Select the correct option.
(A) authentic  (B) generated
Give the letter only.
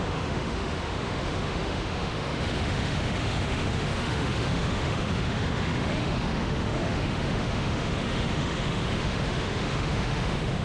B